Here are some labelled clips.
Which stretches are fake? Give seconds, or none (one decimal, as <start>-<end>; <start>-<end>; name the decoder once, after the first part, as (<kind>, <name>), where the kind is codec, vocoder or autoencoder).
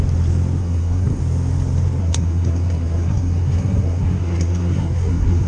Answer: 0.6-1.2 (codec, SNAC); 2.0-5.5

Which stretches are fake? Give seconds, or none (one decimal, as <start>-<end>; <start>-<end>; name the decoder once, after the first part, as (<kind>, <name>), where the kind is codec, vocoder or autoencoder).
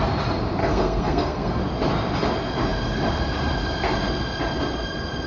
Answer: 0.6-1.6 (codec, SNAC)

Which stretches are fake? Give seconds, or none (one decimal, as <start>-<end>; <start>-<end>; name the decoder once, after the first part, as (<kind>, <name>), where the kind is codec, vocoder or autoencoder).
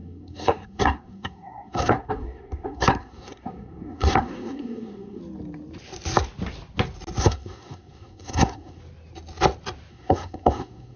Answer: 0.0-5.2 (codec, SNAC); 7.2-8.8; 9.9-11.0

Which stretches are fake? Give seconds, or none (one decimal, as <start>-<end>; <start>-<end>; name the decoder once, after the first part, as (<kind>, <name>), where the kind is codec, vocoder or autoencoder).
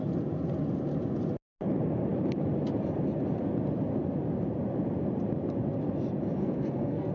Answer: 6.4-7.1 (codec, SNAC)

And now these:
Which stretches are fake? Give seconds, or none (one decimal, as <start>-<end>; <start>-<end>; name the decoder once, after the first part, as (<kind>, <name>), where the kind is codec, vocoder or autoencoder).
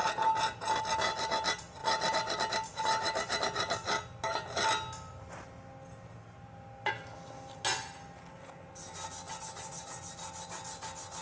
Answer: none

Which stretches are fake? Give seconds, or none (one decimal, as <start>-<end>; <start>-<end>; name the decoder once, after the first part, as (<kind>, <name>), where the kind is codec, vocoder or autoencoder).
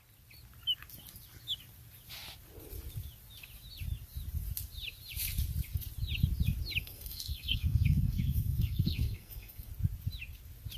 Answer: 6.8-9.7 (codec, SNAC)